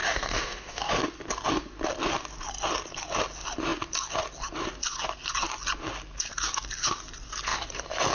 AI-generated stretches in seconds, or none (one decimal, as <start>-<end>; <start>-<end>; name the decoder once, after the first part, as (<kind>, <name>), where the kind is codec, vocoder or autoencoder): 0.0-0.9 (codec, DAC)